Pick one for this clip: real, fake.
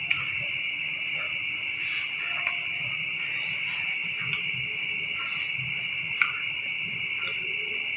real